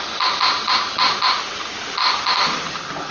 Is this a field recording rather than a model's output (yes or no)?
yes